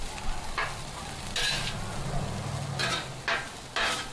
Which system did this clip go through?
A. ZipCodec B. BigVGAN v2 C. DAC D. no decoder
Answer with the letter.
D